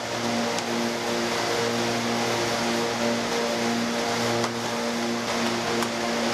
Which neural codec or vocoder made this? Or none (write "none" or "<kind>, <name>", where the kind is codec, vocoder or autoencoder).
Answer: none